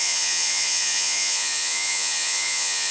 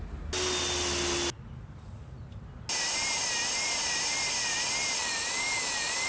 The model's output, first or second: first